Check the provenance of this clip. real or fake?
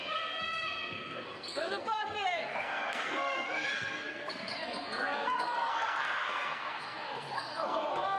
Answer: fake